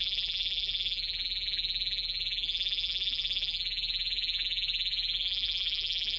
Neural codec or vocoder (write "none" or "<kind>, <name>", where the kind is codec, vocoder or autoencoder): vocoder, BigVGAN v2